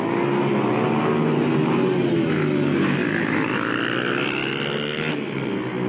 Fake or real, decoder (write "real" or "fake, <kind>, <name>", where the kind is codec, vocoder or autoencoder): real